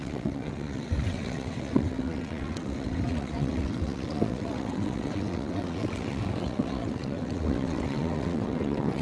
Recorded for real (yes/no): no